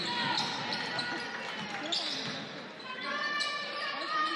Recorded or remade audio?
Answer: recorded